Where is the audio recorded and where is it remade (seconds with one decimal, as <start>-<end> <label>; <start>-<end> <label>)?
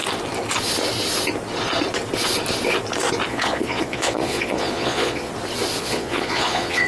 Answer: 0.0-3.3 recorded; 3.3-5.3 remade; 5.3-5.8 recorded; 5.8-6.9 remade